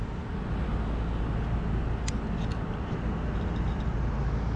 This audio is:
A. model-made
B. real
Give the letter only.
B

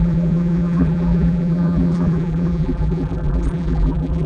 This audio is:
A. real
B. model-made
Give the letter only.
B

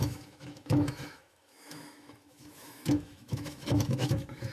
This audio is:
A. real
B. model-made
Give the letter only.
B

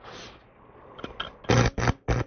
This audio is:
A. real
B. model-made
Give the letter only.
A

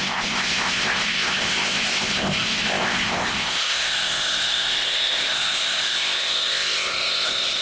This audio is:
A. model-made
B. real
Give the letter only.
A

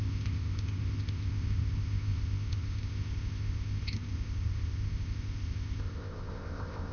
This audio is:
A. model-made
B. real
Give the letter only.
A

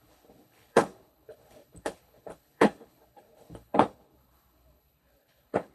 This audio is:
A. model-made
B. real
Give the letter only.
A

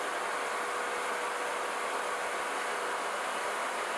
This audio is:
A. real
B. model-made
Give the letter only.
A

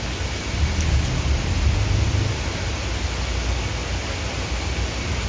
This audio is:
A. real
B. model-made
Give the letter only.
A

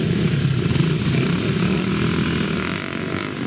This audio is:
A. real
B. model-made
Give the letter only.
A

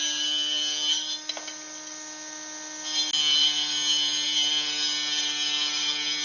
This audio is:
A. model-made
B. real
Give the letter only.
B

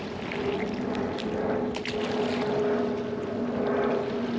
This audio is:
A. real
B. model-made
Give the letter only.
A